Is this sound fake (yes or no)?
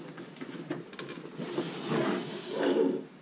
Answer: no